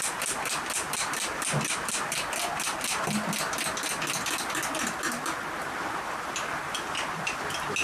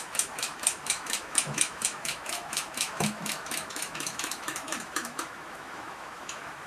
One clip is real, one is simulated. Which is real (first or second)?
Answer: first